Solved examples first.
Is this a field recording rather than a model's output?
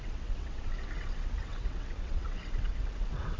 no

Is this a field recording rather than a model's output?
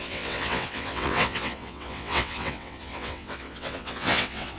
no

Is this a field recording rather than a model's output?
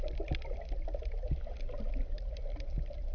yes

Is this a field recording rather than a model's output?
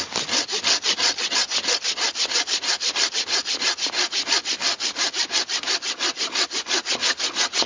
yes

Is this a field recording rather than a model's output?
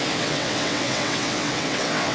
no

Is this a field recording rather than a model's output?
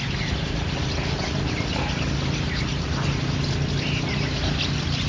yes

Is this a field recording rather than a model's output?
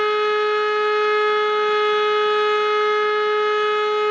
yes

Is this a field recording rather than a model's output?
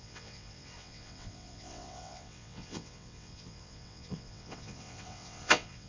no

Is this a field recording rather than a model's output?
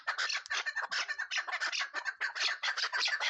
yes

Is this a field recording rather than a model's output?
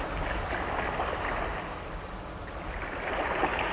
yes